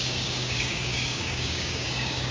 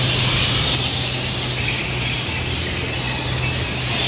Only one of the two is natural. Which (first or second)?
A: second